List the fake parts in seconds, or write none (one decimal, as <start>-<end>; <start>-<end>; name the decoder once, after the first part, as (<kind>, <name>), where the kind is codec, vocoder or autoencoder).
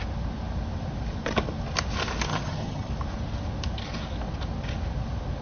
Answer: 2.3-2.9 (vocoder, HiFi-GAN)